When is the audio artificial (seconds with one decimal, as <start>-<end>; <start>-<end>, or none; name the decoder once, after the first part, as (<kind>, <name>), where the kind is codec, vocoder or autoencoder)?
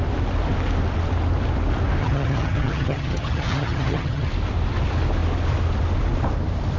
2.0-4.3 (vocoder, HiFi-GAN)